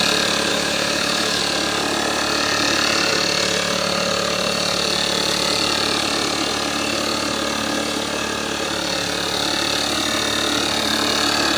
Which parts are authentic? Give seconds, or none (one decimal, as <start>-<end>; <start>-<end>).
0.0-0.5; 1.4-11.6